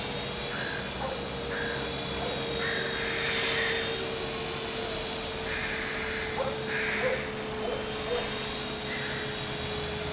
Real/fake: real